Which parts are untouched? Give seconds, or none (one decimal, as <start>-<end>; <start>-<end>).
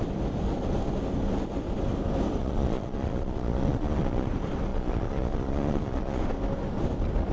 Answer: 0.0-2.4; 4.3-4.7; 6.2-7.3